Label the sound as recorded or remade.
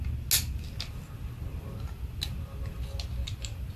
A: recorded